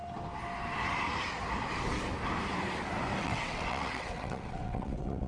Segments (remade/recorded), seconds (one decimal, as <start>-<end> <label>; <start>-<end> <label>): 0.0-3.2 recorded; 3.2-5.3 remade